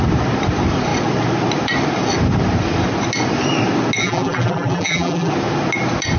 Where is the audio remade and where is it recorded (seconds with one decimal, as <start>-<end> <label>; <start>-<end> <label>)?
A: 0.0-4.0 recorded; 4.0-5.3 remade; 5.3-6.2 recorded